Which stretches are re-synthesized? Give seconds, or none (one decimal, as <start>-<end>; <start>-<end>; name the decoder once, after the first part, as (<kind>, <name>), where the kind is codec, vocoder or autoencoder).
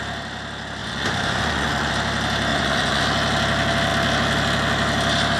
0.8-1.9 (vocoder, Vocos); 2.5-3.0